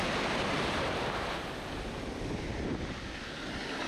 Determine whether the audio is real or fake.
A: real